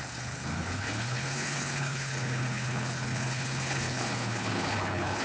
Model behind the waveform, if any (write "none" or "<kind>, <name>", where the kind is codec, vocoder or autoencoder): codec, HILCodec